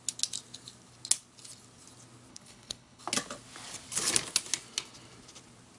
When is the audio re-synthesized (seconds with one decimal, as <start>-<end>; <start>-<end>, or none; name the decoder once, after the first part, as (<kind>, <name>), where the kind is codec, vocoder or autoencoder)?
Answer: 2.3-3.0 (codec, HILCodec)